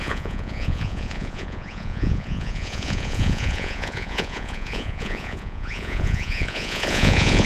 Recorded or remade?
remade